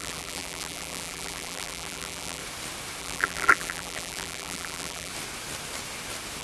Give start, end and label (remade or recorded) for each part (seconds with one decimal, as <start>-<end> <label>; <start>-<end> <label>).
0.0-2.4 remade; 2.4-3.0 recorded; 3.0-5.1 remade; 5.1-6.4 recorded